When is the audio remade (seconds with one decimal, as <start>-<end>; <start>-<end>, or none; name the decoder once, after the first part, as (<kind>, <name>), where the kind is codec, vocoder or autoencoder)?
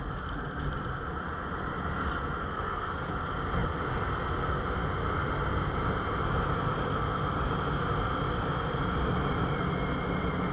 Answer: 2.4-3.1 (codec, SNAC)